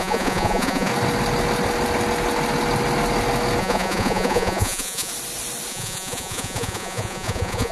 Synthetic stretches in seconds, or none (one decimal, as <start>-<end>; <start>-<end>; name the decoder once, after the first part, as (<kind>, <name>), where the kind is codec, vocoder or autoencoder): 0.0-0.9 (vocoder, Vocos); 3.6-5.1; 5.7-7.7